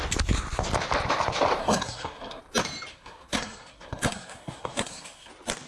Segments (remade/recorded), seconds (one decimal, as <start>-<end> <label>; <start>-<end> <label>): 0.0-1.6 recorded; 1.6-2.4 remade; 2.4-2.9 recorded; 2.9-5.3 remade; 5.3-5.7 recorded